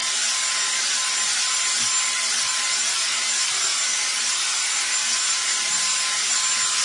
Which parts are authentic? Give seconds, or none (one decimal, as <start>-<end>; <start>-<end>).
0.0-6.8